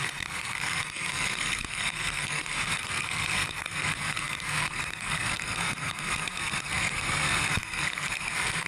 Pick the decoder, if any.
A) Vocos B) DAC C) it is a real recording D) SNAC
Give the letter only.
D